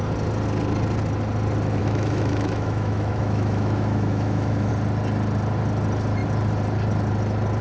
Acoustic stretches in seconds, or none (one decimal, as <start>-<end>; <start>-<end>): 0.0-1.8; 4.7-7.6